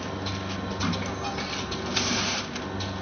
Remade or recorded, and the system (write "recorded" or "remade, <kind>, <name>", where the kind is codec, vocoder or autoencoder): recorded